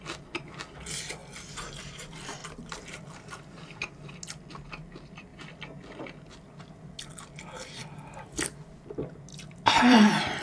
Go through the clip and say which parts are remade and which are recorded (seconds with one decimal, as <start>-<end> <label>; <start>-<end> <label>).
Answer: 0.0-2.4 recorded; 2.4-4.1 remade; 4.1-9.3 recorded; 9.3-10.4 remade